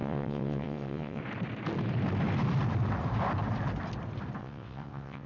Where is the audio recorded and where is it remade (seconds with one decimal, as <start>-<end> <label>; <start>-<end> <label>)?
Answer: 0.0-1.2 remade; 1.2-4.4 recorded; 4.4-5.3 remade